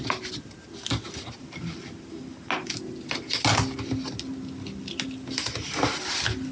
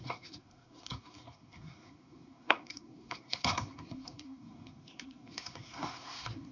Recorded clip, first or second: first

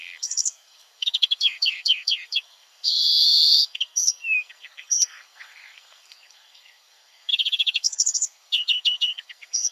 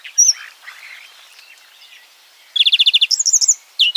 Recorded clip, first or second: second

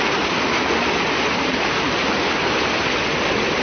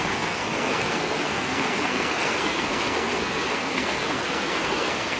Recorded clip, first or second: first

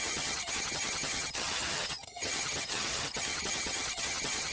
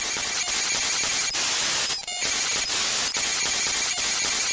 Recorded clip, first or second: second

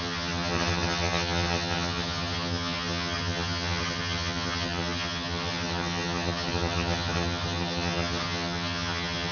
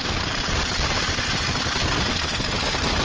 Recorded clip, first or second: second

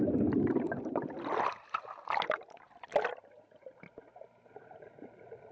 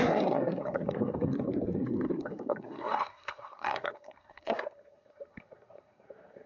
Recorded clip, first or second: first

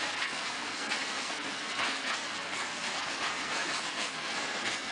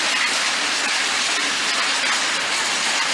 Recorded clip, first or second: second